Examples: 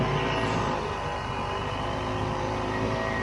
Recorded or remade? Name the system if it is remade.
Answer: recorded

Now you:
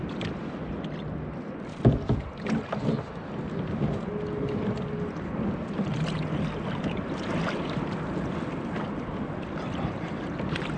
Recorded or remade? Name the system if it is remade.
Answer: recorded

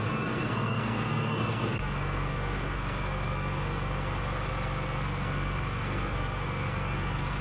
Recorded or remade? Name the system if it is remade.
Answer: remade, codec, SNAC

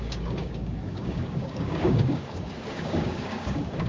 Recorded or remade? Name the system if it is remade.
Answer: remade, codec, DAC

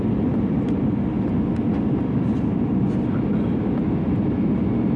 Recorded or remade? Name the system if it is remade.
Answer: recorded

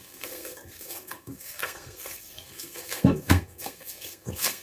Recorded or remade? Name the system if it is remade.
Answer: remade, codec, SNAC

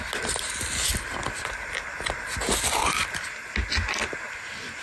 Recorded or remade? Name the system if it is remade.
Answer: recorded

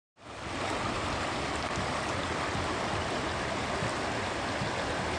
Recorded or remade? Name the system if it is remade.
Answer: recorded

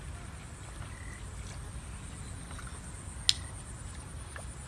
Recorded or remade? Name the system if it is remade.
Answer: recorded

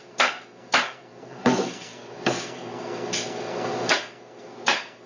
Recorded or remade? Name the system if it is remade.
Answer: remade, codec, SNAC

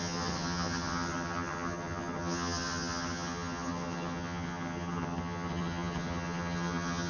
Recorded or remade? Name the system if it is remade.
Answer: remade, vocoder, HiFi-GAN